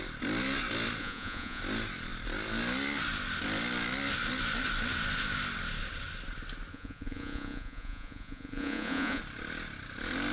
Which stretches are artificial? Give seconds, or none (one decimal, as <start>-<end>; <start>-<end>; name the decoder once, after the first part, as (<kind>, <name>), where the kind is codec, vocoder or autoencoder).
1.0-1.6 (vocoder, Vocos); 6.7-9.2